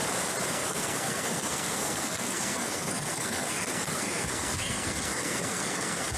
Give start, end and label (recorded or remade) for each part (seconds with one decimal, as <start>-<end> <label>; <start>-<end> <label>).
0.0-0.5 recorded; 0.5-6.2 remade